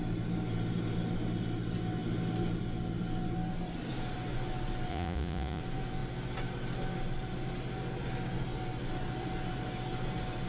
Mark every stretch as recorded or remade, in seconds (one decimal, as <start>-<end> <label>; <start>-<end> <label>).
0.0-4.9 recorded; 4.9-5.6 remade; 5.6-10.5 recorded